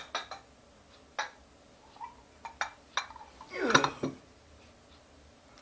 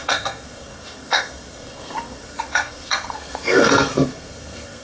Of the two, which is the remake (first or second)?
second